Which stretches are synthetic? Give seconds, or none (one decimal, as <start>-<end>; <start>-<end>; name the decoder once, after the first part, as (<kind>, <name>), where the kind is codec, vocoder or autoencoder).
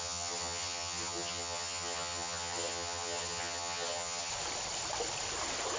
0.0-4.3 (vocoder, HiFi-GAN)